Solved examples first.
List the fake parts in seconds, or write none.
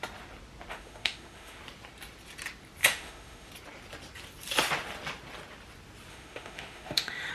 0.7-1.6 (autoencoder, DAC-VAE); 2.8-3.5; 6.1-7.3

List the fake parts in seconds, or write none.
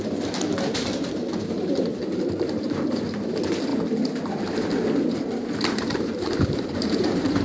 0.0-3.7 (vocoder, BigVGAN v2); 5.6-7.4